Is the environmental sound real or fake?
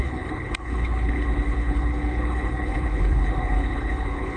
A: fake